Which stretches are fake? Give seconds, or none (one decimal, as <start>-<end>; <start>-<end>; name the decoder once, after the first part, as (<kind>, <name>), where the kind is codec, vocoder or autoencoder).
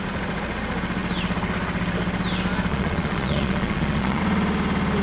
2.7-4.2 (vocoder, Vocos)